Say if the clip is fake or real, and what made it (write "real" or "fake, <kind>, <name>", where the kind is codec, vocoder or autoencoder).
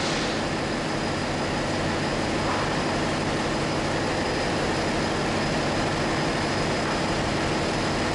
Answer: real